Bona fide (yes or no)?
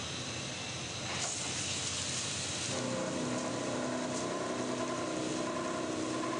yes